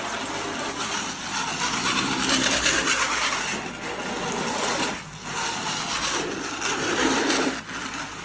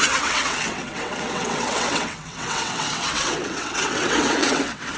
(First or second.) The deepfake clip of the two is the second